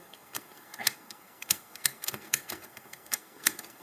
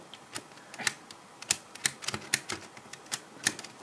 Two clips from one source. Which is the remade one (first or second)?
first